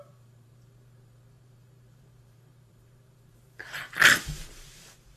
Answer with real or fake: fake